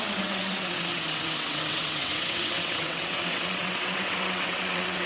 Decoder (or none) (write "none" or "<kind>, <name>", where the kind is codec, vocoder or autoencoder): vocoder, WaveNeXt